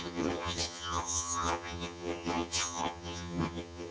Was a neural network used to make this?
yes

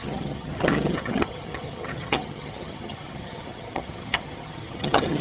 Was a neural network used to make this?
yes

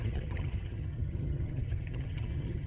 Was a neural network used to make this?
yes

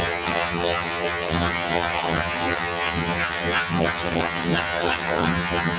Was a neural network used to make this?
yes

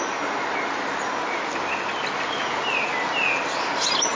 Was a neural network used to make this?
no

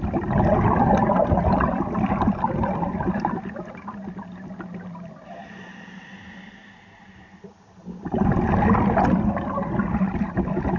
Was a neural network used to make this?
no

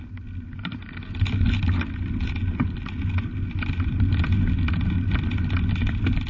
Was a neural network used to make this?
no